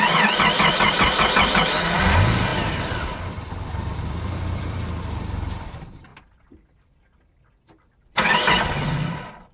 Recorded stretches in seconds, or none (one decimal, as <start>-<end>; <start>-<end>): 6.1-8.2